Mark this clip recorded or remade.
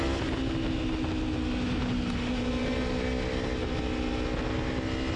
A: recorded